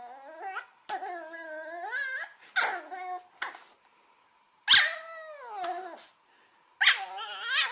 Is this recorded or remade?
recorded